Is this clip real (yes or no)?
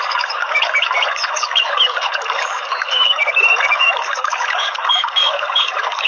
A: no